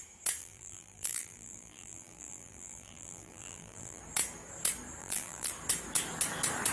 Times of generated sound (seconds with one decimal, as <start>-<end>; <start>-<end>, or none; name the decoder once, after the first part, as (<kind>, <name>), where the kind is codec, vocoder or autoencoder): 0.4-4.0 (vocoder, BigVGAN v2); 5.0-5.5